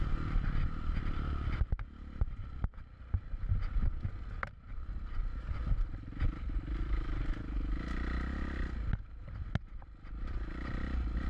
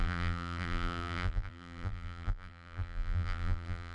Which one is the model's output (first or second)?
second